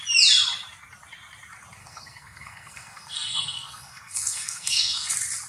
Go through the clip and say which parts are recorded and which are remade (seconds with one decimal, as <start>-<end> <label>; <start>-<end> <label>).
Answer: 0.0-1.8 recorded; 1.8-5.1 remade; 5.1-5.5 recorded